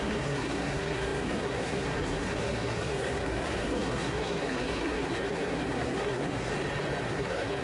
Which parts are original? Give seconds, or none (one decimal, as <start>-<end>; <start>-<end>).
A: 6.5-7.0